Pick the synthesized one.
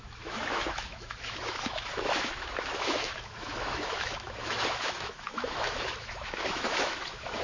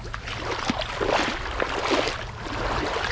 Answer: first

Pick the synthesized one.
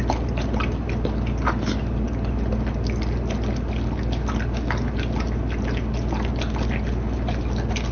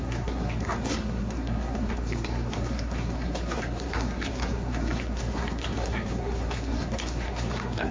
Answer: second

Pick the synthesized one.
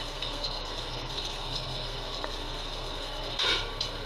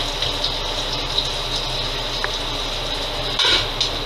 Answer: first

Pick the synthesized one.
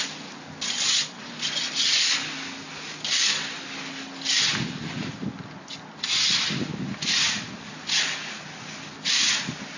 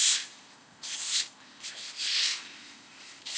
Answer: second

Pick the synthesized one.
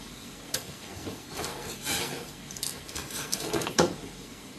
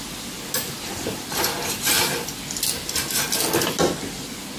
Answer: first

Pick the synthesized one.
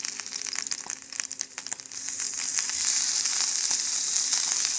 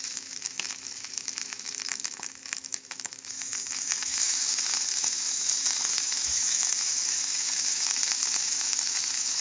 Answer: second